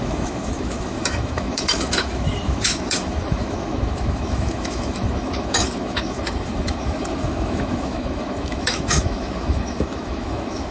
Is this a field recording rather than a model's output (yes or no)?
no